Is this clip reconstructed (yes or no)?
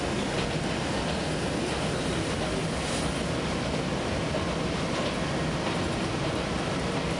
no